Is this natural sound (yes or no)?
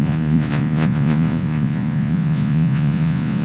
no